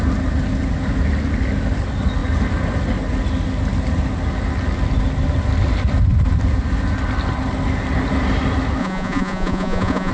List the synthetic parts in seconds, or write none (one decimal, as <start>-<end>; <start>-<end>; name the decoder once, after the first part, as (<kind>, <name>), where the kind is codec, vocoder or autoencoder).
8.8-10.1 (vocoder, Vocos)